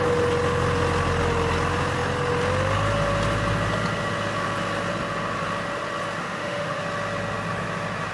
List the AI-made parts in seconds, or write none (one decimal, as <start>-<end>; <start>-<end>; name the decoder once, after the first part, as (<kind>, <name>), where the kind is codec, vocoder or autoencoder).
6.2-6.8 (autoencoder, DAC-VAE)